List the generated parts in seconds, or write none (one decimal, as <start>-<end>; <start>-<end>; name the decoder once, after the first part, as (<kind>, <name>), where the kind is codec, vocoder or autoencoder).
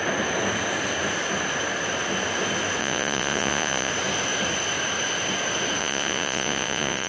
2.8-3.9 (vocoder, Vocos); 5.8-7.1